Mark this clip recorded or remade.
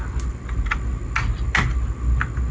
recorded